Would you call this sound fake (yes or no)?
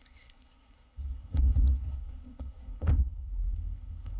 yes